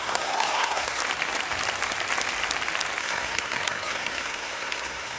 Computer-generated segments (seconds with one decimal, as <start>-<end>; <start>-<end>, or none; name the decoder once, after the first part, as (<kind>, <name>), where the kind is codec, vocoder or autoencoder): 0.0-1.0 (codec, SNAC); 3.0-5.2